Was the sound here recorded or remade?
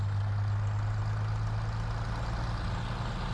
recorded